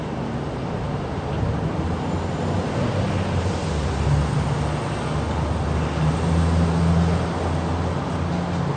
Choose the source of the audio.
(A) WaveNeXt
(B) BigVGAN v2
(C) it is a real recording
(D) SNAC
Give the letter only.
C